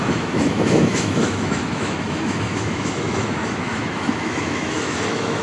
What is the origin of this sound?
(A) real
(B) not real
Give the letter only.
B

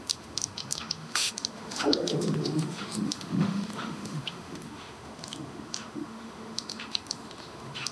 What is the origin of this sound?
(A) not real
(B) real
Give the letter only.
A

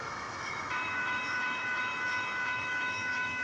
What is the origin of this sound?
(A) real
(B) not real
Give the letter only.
B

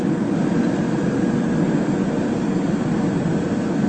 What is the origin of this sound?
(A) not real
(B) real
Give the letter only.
B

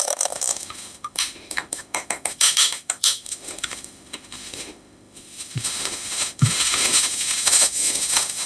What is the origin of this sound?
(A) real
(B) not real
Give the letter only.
B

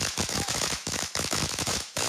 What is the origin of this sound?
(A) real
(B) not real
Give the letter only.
B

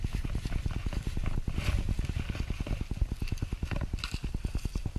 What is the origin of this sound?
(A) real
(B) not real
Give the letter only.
A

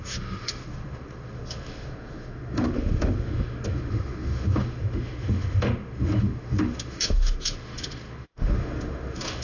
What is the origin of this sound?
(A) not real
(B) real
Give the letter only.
A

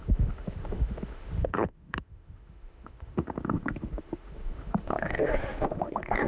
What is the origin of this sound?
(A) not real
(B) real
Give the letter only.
A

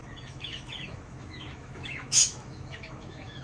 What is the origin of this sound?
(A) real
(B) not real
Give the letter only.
B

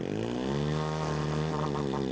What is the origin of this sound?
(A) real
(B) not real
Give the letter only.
A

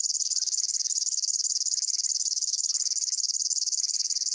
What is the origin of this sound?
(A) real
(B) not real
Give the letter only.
B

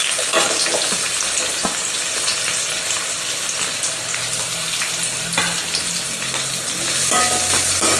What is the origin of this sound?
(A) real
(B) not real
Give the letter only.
A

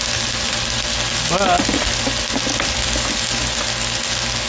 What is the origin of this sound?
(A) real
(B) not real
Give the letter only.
A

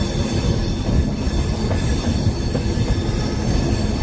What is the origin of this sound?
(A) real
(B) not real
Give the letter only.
A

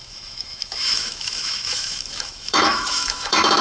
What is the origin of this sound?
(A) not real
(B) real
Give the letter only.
A